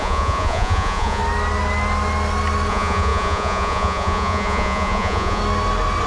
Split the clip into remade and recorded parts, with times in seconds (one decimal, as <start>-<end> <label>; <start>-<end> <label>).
0.0-1.2 remade; 1.2-2.7 recorded; 2.7-5.4 remade; 5.4-6.1 recorded